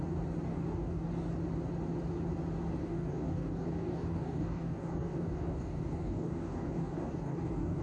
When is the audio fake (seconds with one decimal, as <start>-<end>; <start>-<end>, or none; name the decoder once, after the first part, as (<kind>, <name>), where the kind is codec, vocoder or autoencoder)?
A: 0.5-1.1 (codec, DAC); 2.8-7.8